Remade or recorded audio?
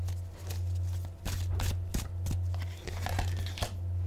recorded